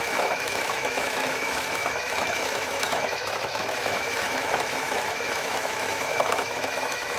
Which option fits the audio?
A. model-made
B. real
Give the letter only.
A